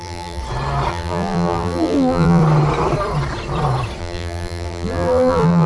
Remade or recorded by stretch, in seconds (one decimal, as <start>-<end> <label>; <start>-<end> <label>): 0.0-0.4 remade; 0.4-0.9 recorded; 0.9-2.4 remade; 2.4-4.0 recorded; 4.0-5.7 remade